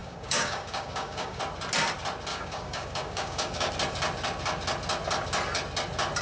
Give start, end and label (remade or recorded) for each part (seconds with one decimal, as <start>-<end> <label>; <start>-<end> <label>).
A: 0.0-1.4 remade; 1.4-2.3 recorded; 2.3-3.7 remade; 3.7-6.2 recorded